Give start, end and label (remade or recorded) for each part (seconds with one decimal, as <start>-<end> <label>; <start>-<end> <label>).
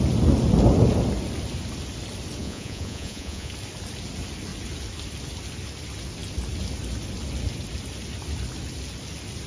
0.0-2.4 recorded; 2.4-3.5 remade; 3.5-9.5 recorded